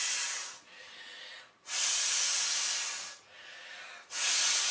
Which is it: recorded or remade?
recorded